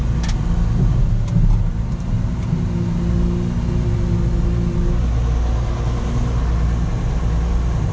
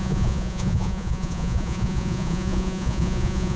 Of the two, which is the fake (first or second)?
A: second